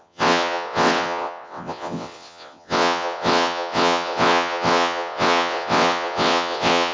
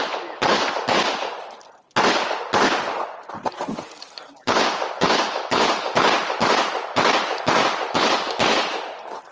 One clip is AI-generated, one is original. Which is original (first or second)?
second